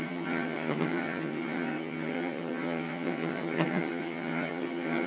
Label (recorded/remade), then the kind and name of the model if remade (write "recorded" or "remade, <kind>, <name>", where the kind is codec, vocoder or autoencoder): remade, vocoder, HiFi-GAN